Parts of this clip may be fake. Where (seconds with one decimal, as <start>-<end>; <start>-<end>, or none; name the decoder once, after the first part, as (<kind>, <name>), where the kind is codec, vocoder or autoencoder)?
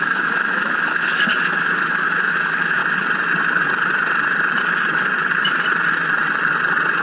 0.0-2.8 (autoencoder, DAC-VAE)